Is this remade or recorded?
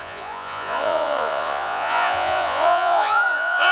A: remade